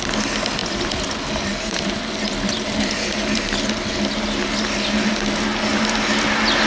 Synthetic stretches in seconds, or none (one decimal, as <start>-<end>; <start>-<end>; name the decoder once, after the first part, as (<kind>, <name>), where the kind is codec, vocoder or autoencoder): 0.6-3.6 (vocoder, BigVGAN v2)